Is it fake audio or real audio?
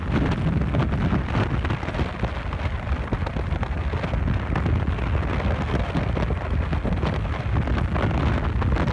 real